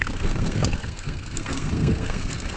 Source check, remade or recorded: remade